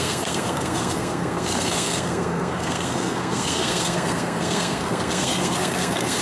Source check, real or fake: fake